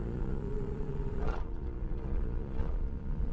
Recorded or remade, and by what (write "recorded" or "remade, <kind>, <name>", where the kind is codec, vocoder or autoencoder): remade, vocoder, Vocos